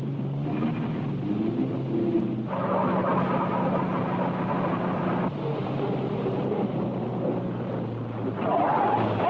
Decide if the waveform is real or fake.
real